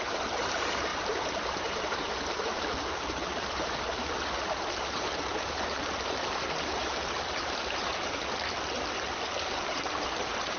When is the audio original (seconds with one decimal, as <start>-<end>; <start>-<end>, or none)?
7.9-9.9